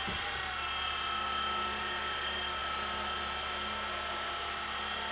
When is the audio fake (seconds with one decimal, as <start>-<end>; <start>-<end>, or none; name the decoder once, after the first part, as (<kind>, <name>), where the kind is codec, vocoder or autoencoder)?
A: none